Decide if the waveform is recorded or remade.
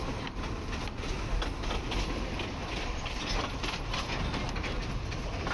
recorded